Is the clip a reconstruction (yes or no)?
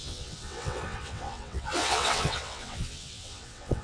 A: yes